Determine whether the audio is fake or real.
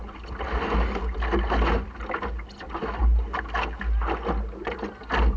real